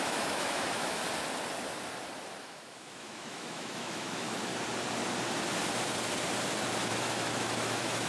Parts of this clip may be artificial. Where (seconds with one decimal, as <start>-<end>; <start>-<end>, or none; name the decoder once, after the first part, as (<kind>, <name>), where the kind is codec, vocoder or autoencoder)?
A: 0.0-1.0 (autoencoder, DAC-VAE); 2.4-4.5; 6.9-8.1